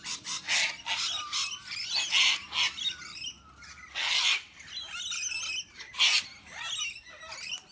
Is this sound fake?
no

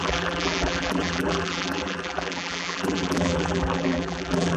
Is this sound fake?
yes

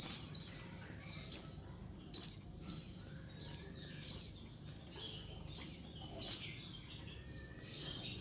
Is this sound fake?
no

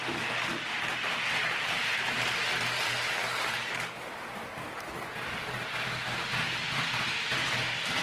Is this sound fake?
no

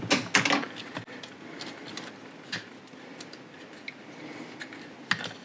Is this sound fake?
no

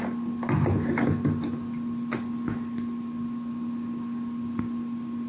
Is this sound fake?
no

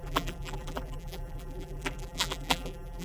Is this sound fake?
yes